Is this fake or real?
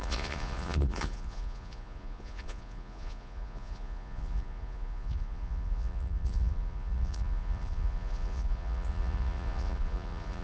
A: fake